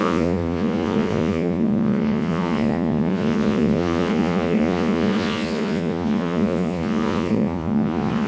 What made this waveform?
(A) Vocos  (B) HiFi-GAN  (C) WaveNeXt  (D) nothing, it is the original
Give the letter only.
A